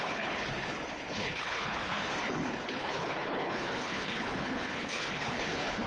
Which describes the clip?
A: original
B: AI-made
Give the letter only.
B